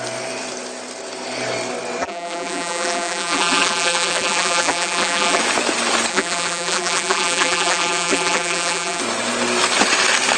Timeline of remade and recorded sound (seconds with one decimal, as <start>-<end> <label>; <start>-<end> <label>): 0.0-2.0 recorded; 2.0-5.4 remade; 5.4-6.1 recorded; 6.1-9.0 remade; 9.0-10.4 recorded

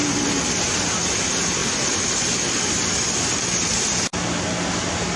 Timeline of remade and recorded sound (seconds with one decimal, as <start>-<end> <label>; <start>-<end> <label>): 0.0-5.2 recorded